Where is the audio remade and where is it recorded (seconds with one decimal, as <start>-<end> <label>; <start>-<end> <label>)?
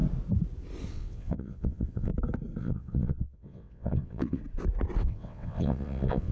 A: 0.0-0.9 recorded; 0.9-2.1 remade; 2.1-2.6 recorded; 2.6-4.4 remade; 4.4-5.0 recorded; 5.0-6.3 remade